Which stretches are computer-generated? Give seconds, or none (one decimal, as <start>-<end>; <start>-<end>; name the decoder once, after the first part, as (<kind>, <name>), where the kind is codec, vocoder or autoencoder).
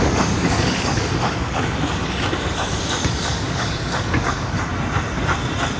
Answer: 0.0-4.7 (codec, DAC)